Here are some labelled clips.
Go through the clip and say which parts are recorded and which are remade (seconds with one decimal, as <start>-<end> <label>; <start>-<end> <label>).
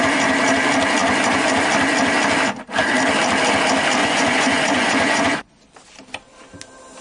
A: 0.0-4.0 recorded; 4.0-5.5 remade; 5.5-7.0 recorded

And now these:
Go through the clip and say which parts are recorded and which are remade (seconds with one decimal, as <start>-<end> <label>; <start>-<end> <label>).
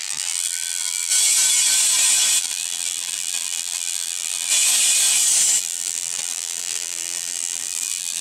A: 0.0-1.1 remade; 1.1-2.4 recorded; 2.4-4.5 remade; 4.5-5.6 recorded; 5.6-8.2 remade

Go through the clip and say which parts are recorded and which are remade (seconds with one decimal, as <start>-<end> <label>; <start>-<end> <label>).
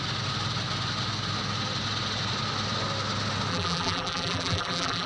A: 0.0-3.5 recorded; 3.5-5.1 remade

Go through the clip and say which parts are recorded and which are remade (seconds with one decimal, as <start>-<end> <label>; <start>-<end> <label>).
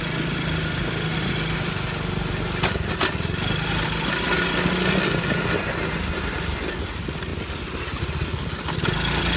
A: 0.0-9.4 recorded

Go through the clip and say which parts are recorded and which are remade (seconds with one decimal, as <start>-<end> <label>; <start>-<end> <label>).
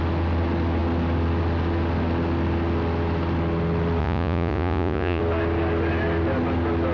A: 0.0-4.0 recorded; 4.0-5.2 remade; 5.2-6.9 recorded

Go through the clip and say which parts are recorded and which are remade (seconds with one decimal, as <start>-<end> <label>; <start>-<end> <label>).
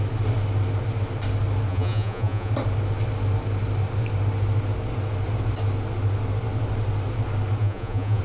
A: 0.0-1.7 recorded; 1.7-2.5 remade; 2.5-7.6 recorded; 7.6-8.2 remade